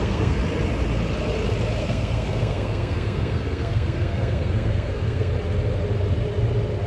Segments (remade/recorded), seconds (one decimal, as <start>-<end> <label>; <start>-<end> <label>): 0.0-0.4 remade; 0.4-1.8 recorded; 1.8-5.3 remade; 5.3-6.9 recorded